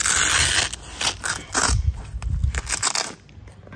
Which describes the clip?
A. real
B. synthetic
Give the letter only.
A